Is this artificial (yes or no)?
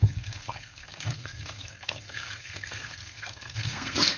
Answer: yes